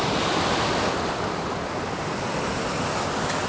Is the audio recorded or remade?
recorded